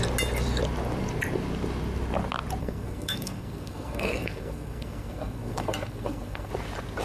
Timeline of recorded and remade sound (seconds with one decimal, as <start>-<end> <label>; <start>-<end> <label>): 0.0-2.6 recorded; 2.6-6.5 remade; 6.5-7.0 recorded